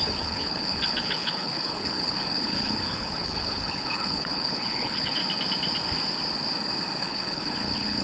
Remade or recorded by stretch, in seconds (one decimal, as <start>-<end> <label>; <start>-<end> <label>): 0.0-5.2 remade; 5.2-7.0 recorded; 7.0-8.0 remade